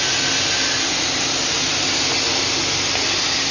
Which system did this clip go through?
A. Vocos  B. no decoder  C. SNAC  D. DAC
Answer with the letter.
B